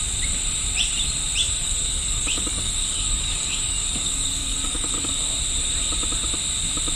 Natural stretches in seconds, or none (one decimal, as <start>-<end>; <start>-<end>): 0.0-1.4; 5.1-7.0